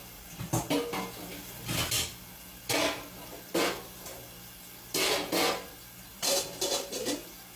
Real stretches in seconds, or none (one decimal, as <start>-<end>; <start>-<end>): 0.0-6.1; 7.0-7.6